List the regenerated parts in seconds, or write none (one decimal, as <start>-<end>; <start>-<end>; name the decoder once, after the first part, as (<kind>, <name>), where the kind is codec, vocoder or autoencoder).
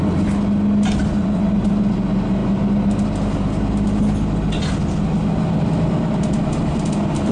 none